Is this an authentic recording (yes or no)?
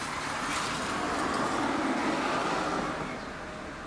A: yes